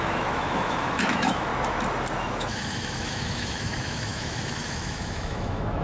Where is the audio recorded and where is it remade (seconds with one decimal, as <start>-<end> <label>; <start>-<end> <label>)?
0.0-1.5 remade; 1.5-2.2 recorded; 2.2-5.8 remade